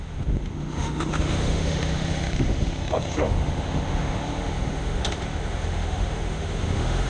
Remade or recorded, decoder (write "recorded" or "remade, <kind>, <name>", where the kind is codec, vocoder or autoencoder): remade, autoencoder, DAC-VAE